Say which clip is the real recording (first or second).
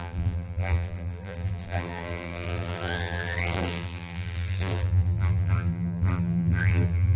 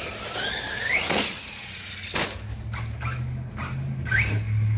second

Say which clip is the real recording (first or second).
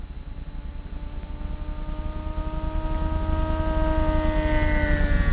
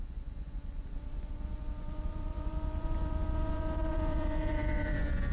first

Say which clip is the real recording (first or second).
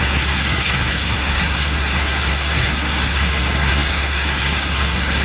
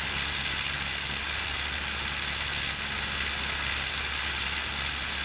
second